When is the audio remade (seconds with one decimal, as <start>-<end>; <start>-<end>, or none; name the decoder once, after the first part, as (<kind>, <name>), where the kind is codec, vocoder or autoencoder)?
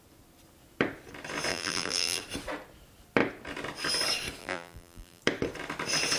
1.5-2.2 (vocoder, BigVGAN v2); 4.4-5.2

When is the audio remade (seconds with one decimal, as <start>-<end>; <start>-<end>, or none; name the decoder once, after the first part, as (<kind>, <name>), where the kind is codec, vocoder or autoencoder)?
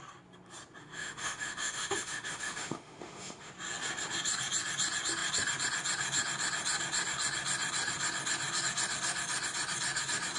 0.8-3.5 (autoencoder, DAC-VAE)